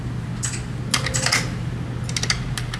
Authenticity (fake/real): real